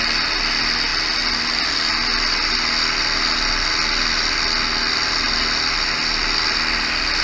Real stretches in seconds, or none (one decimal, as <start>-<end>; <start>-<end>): 0.0-7.2